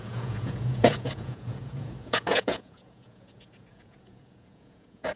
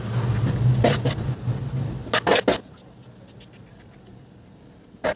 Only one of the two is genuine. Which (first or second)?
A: second